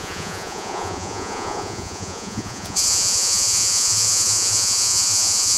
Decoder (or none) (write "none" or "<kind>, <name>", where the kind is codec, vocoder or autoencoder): vocoder, Vocos